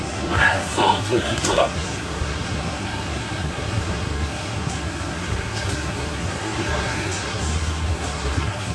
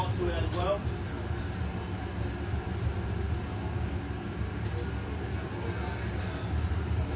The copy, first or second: first